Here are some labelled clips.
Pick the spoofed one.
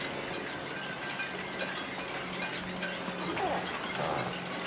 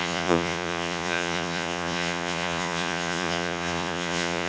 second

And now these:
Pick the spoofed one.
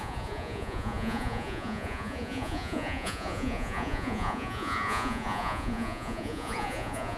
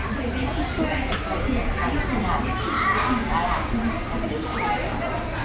first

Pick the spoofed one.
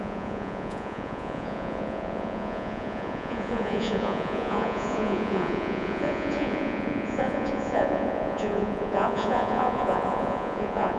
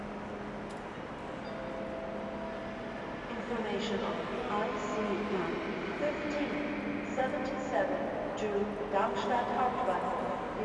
first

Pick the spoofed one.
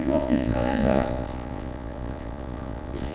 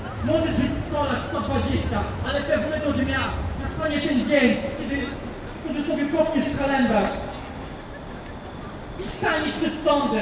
first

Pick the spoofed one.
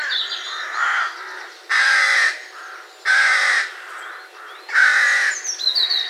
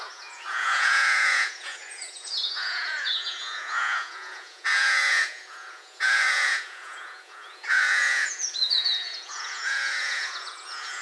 second